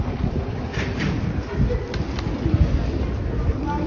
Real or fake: real